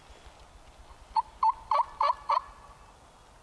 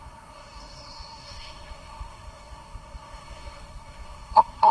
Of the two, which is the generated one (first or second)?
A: second